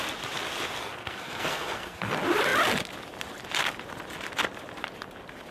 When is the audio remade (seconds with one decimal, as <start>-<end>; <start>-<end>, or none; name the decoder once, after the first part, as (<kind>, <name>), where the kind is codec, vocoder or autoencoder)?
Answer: 0.8-2.1 (codec, SNAC)

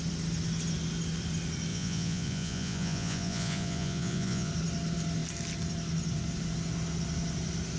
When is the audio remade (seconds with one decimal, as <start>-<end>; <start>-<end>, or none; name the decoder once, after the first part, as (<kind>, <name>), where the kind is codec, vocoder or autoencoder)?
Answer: 1.7-4.5 (vocoder, Vocos)